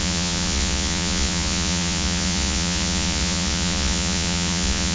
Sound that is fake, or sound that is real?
fake